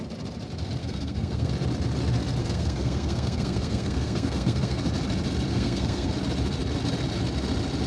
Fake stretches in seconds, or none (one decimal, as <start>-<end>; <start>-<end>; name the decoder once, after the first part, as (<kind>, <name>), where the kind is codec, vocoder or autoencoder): 0.8-1.5 (codec, SNAC); 2.4-4.8; 5.5-6.1